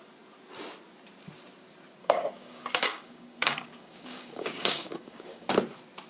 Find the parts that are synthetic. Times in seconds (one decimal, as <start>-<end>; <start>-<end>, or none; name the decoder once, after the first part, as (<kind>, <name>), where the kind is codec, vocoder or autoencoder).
2.0-5.5 (codec, DAC)